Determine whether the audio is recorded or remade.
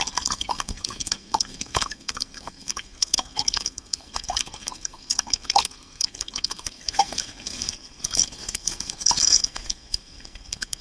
remade